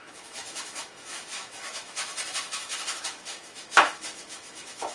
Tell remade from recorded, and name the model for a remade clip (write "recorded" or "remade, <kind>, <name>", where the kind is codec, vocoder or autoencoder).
remade, autoencoder, DAC-VAE